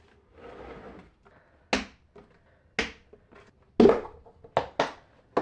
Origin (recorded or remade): recorded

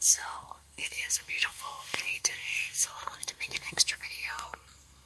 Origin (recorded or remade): remade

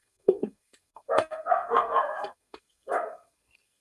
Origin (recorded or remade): remade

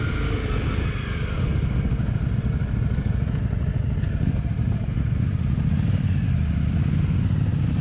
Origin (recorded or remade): recorded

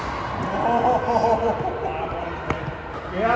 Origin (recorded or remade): recorded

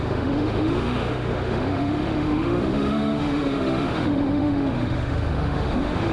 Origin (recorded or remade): remade